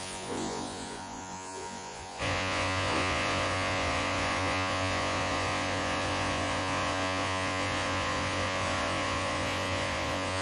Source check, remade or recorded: remade